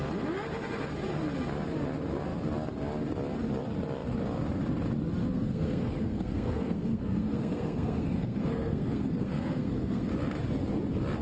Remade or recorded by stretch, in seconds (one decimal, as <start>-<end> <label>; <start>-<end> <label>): 0.0-5.2 recorded; 5.2-10.1 remade; 10.1-11.2 recorded